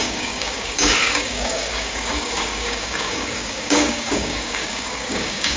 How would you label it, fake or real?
fake